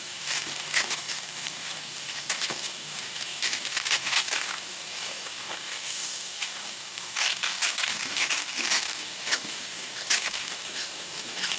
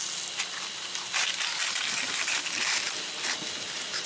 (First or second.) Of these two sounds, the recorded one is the second